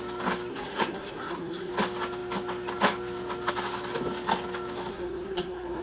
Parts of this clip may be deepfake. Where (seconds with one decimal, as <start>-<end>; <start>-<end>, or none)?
0.5-1.7; 4.9-5.8